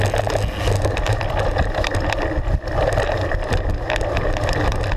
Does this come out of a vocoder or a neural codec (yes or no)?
no